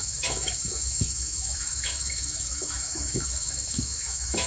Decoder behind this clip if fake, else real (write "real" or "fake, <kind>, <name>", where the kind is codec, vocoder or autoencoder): fake, autoencoder, DAC-VAE